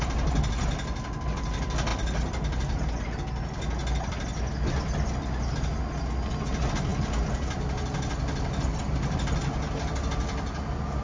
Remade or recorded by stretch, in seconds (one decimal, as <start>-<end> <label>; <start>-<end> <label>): 0.0-11.0 recorded